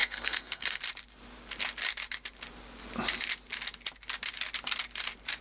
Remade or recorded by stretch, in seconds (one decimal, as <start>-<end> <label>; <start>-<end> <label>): 0.0-0.8 remade; 0.8-5.4 recorded